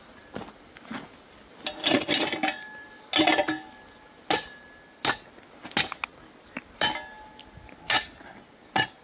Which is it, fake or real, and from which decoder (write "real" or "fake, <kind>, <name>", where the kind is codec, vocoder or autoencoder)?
real